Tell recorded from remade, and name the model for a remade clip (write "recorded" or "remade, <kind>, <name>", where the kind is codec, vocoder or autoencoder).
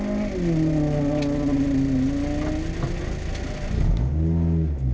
recorded